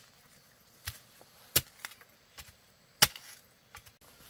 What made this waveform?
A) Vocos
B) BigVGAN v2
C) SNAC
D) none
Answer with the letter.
D